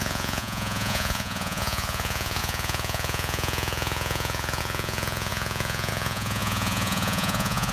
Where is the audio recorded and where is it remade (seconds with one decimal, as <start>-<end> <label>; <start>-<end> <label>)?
0.0-7.7 remade